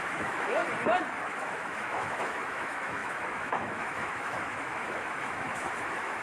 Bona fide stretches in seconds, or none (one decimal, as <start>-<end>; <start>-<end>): 0.6-1.3